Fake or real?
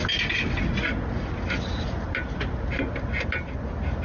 real